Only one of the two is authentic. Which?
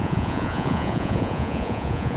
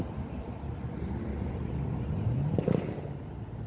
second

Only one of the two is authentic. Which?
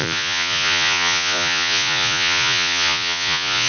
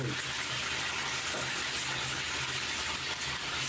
second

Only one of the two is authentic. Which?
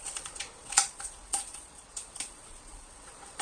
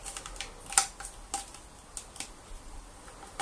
second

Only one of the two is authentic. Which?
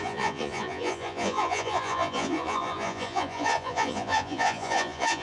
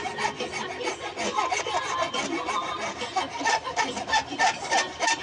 second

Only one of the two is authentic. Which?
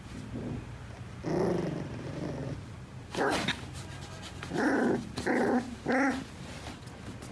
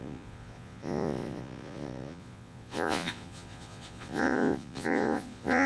first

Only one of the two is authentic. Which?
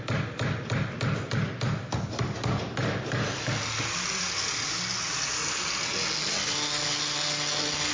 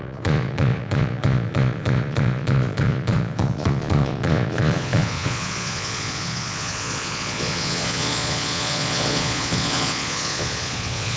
first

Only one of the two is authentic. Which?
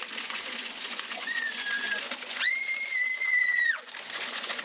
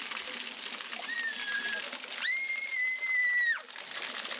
second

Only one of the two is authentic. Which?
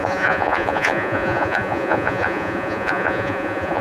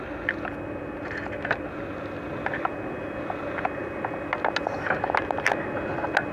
second